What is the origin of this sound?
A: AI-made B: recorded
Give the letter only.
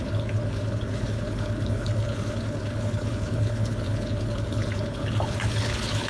A